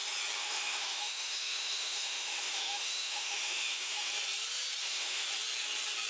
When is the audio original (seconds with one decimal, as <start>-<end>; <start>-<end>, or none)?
0.0-0.4; 4.1-4.8; 5.3-6.1